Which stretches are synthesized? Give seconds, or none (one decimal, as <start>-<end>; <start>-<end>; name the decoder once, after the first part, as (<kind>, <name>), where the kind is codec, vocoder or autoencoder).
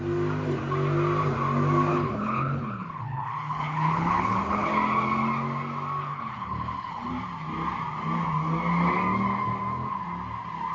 1.9-4.7 (codec, HILCodec); 6.0-7.1